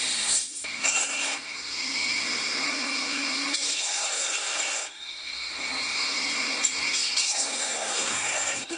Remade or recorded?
remade